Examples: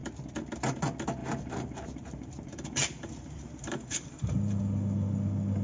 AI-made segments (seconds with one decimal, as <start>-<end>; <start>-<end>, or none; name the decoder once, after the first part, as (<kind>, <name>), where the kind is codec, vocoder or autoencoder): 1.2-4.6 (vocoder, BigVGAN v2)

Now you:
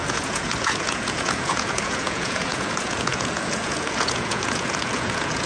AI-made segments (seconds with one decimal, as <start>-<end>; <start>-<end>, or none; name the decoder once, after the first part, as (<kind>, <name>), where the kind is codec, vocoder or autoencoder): 0.0-5.5 (vocoder, Vocos)

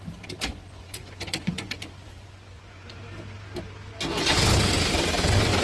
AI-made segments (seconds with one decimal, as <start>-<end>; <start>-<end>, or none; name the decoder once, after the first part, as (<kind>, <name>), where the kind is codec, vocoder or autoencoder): 0.5-3.0 (vocoder, Vocos)

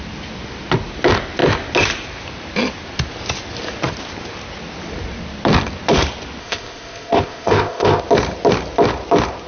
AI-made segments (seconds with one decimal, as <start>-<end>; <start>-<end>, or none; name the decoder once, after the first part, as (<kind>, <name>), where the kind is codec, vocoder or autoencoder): 6.4-8.0 (codec, ZipCodec)

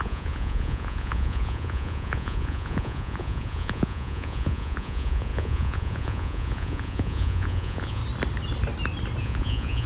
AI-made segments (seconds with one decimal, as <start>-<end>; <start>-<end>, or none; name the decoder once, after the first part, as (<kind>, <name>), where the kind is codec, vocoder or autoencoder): 0.0-8.0 (vocoder, Vocos); 9.2-9.9